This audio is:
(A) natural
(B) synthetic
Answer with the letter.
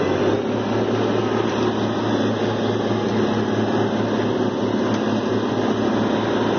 A